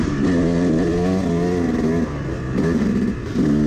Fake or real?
real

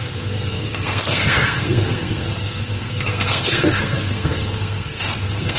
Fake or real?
fake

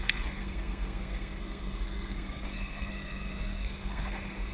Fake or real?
fake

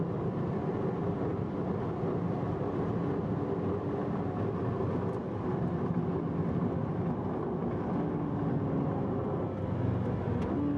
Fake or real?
real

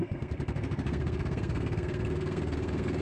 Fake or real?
fake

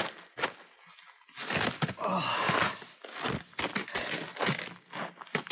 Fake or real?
real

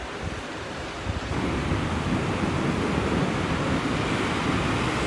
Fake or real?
real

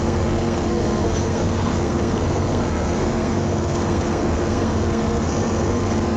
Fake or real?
fake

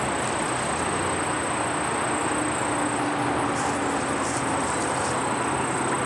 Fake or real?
real